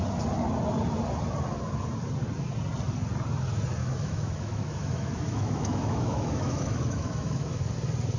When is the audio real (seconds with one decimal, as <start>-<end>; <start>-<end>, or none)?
0.0-3.8; 7.7-8.2